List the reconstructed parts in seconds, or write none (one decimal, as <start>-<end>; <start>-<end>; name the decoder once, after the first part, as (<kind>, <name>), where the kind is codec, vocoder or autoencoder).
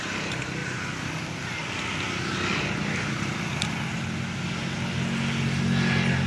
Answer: none